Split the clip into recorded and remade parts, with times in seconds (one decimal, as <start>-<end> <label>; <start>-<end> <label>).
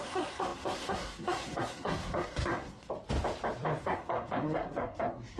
0.0-2.9 remade; 2.9-3.8 recorded; 3.8-5.4 remade